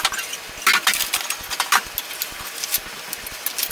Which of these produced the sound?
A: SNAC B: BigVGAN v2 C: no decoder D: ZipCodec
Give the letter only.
C